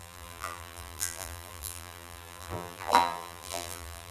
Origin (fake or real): fake